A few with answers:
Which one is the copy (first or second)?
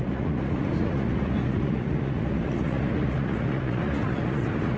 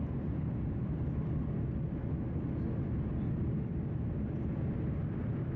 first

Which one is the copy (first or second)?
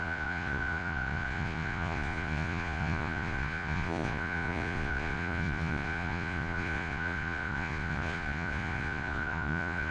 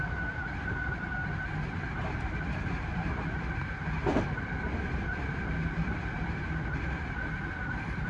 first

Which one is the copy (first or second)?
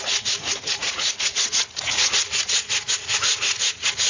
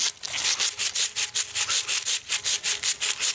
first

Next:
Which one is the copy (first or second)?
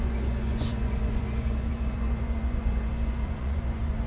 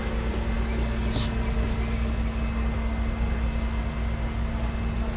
first